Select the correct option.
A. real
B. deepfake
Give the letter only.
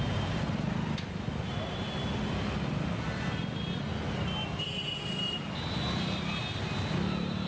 A